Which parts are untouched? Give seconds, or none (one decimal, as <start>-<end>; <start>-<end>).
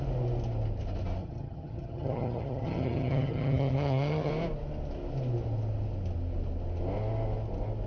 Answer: 0.0-1.2; 4.3-7.9